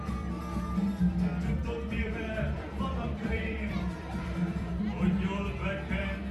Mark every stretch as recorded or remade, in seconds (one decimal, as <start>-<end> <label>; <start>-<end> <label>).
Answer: 0.0-1.6 recorded; 1.6-5.4 remade; 5.4-6.3 recorded